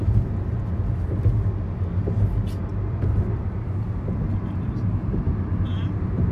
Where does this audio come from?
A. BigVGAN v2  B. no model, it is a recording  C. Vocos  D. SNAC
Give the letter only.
B